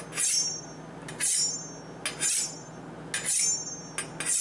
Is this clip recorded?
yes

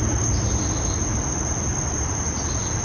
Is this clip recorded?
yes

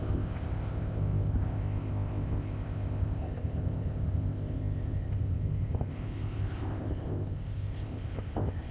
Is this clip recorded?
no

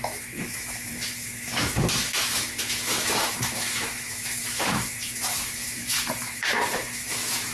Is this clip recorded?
no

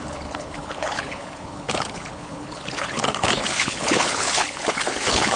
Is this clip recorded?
no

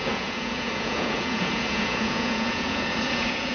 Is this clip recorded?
no